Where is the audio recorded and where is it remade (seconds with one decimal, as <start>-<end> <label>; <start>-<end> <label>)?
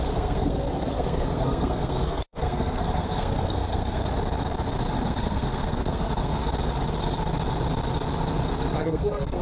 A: 0.0-4.0 remade; 4.0-5.0 recorded; 5.0-6.3 remade; 6.3-8.8 recorded; 8.8-9.4 remade